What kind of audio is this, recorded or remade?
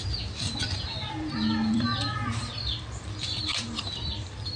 remade